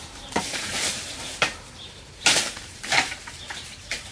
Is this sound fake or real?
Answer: fake